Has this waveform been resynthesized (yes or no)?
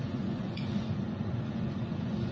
yes